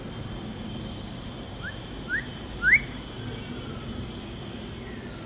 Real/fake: real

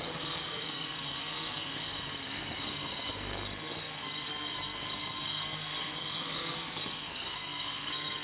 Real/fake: fake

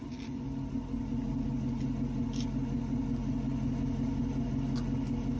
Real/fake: real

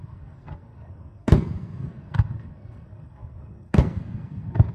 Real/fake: fake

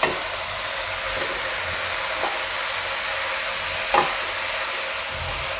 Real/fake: real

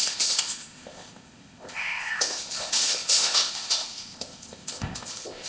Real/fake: fake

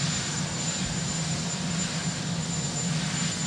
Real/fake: real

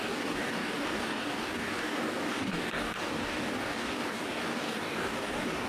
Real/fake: fake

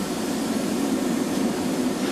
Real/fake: fake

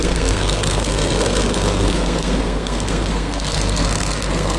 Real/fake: fake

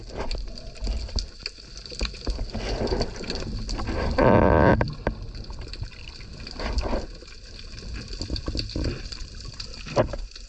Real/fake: real